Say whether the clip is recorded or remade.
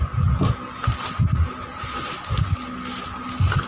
recorded